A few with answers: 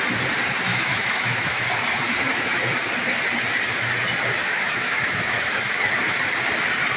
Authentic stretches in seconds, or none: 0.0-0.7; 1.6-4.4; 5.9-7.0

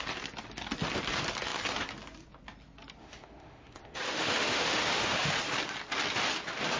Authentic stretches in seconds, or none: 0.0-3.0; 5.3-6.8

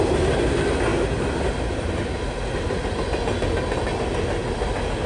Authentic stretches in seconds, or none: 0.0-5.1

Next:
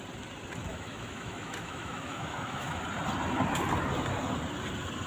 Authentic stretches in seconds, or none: 0.0-0.7; 2.8-5.1

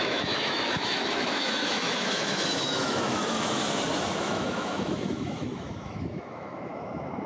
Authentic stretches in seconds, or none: 3.6-4.2

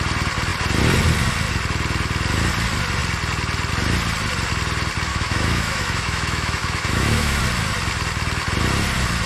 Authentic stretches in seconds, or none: 0.0-5.1; 7.4-9.3